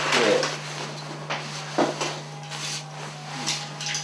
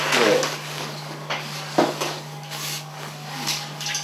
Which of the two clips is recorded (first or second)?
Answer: first